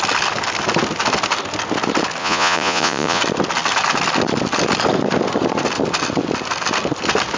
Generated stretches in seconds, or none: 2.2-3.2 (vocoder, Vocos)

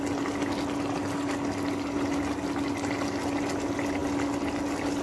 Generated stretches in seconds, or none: none